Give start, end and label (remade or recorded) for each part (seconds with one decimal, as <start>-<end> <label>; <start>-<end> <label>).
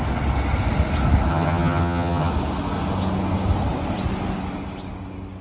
0.0-1.3 recorded; 1.3-2.3 remade; 2.3-5.4 recorded